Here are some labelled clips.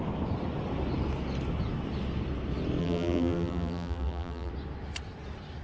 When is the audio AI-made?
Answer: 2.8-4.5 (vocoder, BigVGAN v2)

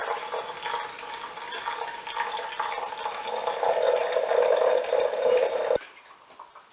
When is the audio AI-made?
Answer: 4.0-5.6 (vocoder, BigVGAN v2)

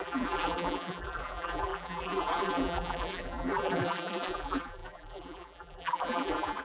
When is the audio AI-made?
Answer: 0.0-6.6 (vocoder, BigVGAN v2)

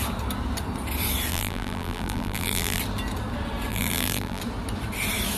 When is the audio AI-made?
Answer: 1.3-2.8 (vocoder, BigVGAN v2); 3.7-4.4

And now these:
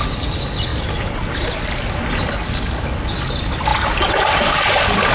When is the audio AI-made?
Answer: none

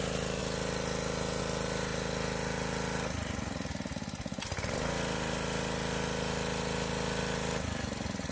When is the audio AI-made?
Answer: none

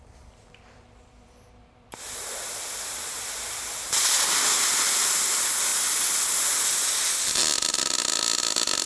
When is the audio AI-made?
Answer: 0.0-5.7 (vocoder, BigVGAN v2)

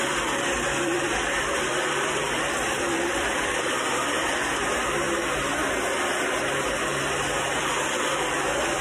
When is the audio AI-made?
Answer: 0.0-4.3 (vocoder, BigVGAN v2)